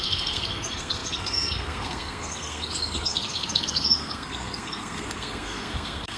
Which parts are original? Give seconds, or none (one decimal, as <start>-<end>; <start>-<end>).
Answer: none